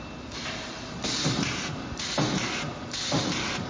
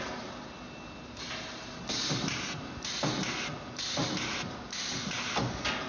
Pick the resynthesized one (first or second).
first